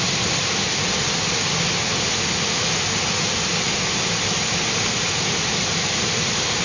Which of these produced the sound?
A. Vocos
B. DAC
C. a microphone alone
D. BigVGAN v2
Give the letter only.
C